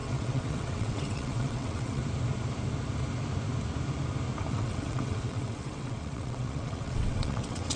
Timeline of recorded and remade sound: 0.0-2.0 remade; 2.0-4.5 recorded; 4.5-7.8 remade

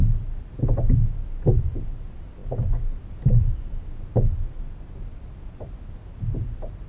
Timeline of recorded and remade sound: 0.0-6.9 recorded

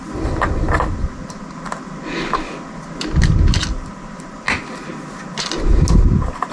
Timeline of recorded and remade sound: 0.0-6.5 recorded

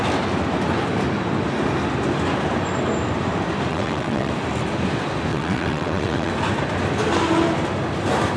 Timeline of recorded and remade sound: 0.0-3.7 recorded; 3.7-4.3 remade; 4.3-5.3 recorded; 5.3-6.3 remade; 6.3-8.4 recorded

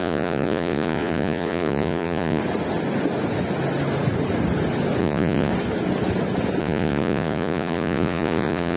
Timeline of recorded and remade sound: 0.0-2.4 remade; 2.4-5.0 recorded; 5.0-5.5 remade; 5.5-6.6 recorded; 6.6-8.8 remade

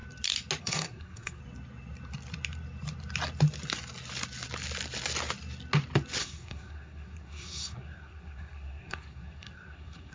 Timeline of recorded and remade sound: 0.0-0.6 recorded; 0.6-1.4 remade; 1.4-6.2 recorded; 6.2-10.1 remade

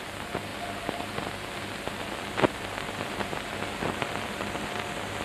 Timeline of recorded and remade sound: 0.0-5.2 recorded

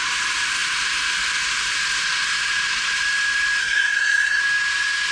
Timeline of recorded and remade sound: 0.0-3.6 recorded; 3.6-4.4 remade; 4.4-5.1 recorded